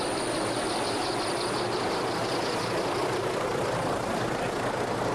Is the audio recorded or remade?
recorded